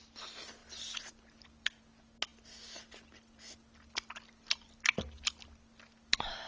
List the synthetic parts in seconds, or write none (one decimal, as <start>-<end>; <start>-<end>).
none